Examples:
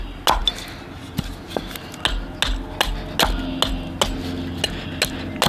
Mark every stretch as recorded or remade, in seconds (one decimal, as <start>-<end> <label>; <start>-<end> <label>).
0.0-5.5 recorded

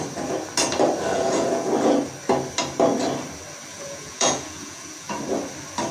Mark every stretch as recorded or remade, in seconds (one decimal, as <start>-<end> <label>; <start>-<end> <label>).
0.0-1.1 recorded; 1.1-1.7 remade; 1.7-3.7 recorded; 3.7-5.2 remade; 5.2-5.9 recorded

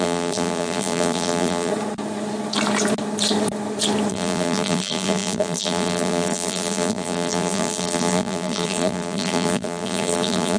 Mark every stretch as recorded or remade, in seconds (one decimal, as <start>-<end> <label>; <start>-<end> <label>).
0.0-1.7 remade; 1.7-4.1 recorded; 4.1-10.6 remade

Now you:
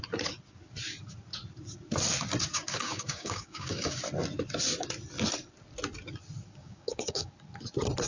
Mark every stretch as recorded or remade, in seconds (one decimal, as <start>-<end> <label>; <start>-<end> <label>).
0.0-2.5 recorded; 2.5-4.0 remade; 4.0-6.6 recorded; 6.6-7.3 remade; 7.3-8.1 recorded

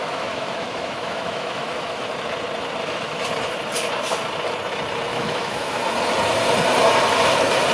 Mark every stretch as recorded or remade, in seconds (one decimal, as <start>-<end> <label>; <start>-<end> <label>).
0.0-2.1 remade; 2.1-2.8 recorded; 2.8-3.3 remade; 3.3-5.1 recorded; 5.1-5.8 remade; 5.8-7.7 recorded

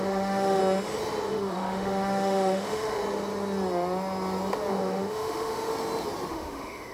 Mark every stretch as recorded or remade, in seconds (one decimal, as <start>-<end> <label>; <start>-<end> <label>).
0.0-0.6 remade; 0.6-1.3 recorded; 1.3-3.0 remade; 3.0-4.7 recorded; 4.7-5.7 remade; 5.7-6.3 recorded; 6.3-6.9 remade